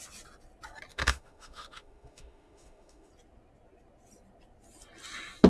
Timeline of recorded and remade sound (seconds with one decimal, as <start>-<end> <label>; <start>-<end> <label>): 0.0-0.9 recorded; 0.9-3.1 remade; 3.1-5.5 recorded